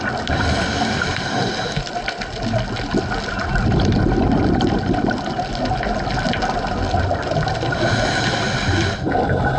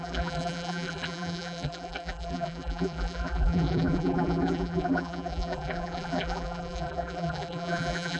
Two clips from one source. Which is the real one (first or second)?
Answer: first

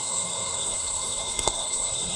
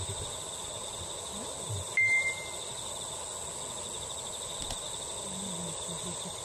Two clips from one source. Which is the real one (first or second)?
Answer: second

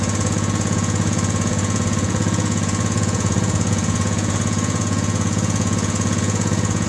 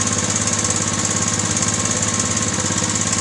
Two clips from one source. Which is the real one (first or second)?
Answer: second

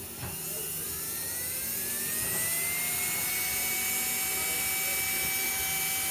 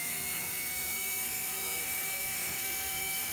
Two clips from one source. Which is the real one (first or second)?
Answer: first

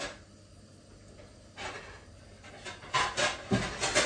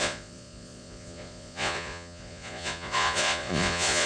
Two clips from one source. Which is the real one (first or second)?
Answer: first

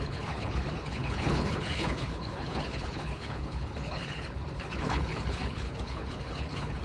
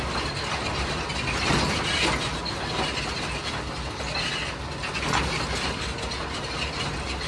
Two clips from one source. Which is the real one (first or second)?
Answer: second